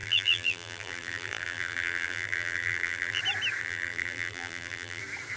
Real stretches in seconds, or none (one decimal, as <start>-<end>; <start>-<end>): 3.2-3.6; 5.0-5.4